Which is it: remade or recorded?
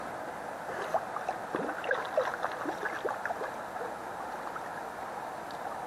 recorded